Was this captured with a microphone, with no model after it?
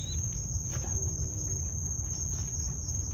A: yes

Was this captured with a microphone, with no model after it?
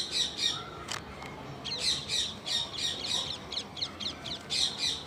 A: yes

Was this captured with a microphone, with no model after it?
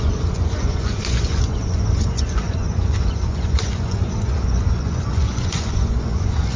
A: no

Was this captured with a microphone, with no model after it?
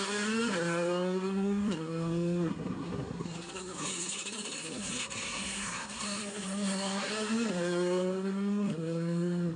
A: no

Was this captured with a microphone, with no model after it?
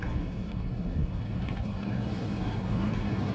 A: no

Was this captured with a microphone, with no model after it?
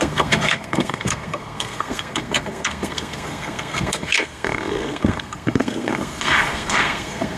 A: no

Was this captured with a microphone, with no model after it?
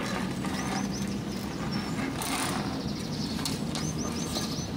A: yes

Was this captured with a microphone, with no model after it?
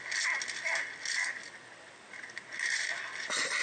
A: yes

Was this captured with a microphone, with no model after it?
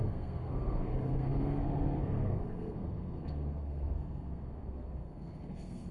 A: no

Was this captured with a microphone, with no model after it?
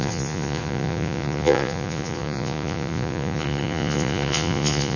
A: no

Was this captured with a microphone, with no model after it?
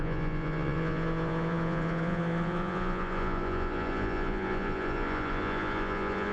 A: no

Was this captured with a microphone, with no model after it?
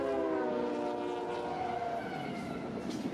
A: yes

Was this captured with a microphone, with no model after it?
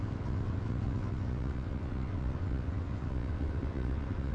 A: no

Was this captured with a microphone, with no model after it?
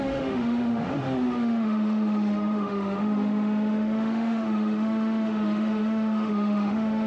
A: no